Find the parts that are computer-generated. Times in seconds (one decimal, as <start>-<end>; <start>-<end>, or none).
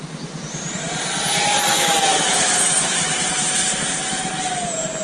1.7-3.1